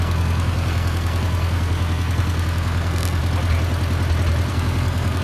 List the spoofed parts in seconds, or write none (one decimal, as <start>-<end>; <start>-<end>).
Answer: 0.0-3.2; 4.5-5.2